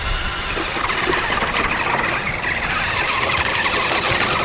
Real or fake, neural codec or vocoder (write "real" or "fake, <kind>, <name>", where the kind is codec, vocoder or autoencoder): real